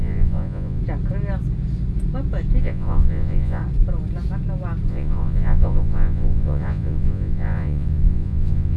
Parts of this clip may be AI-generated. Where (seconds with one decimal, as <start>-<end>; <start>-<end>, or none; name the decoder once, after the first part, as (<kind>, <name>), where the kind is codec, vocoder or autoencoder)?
0.0-0.8 (vocoder, Vocos); 2.6-3.6; 4.9-8.8